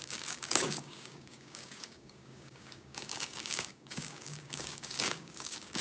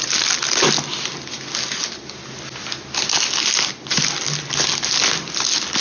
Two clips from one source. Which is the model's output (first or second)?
first